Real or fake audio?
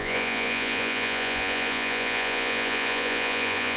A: fake